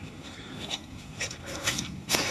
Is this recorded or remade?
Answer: remade